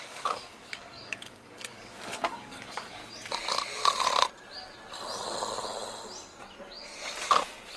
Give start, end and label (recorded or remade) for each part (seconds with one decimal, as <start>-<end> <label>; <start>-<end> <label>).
0.0-3.0 remade; 3.0-7.8 recorded

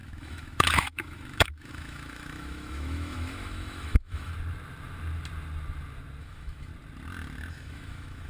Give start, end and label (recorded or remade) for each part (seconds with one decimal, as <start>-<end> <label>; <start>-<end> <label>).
0.0-4.3 remade; 4.3-6.2 recorded; 6.2-6.7 remade; 6.7-7.5 recorded; 7.5-8.3 remade

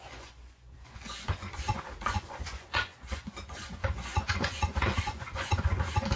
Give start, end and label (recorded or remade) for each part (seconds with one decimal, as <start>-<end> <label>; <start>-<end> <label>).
0.0-6.2 remade

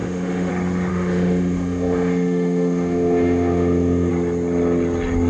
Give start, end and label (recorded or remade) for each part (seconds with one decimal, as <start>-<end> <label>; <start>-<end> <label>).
0.0-0.5 remade; 0.5-0.9 recorded; 0.9-4.1 remade; 4.1-5.3 recorded

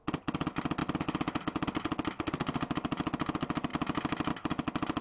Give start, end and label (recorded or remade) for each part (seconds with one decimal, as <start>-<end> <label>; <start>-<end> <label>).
0.0-5.0 recorded

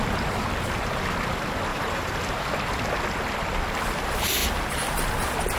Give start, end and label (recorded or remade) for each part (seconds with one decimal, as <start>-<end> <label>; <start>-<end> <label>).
0.0-1.7 recorded; 1.7-2.5 remade; 2.5-5.6 recorded